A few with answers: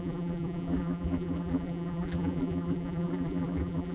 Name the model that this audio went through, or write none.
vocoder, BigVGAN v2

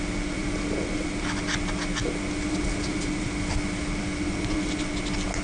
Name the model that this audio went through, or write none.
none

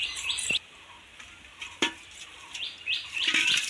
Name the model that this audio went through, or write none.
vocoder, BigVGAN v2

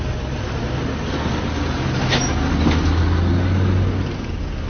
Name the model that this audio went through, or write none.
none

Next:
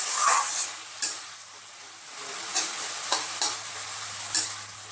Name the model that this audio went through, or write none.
vocoder, BigVGAN v2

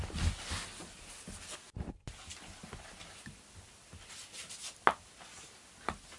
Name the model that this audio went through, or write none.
none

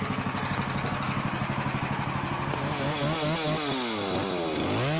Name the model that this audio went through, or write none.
none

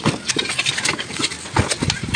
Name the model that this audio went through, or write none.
none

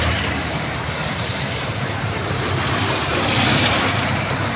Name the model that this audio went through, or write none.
vocoder, BigVGAN v2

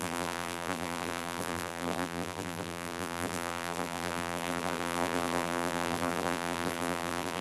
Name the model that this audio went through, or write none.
vocoder, BigVGAN v2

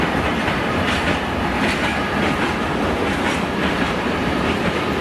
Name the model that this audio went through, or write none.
vocoder, BigVGAN v2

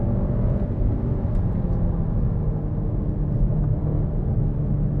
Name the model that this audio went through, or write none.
none